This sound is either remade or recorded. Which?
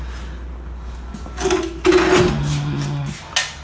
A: recorded